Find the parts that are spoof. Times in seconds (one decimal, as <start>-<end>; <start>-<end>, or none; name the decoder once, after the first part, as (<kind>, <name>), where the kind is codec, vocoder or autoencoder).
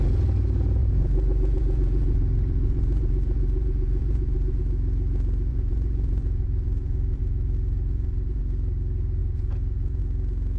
0.8-4.6 (vocoder, Vocos); 5.5-8.4; 9.2-10.0